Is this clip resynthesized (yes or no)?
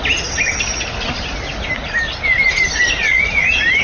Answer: no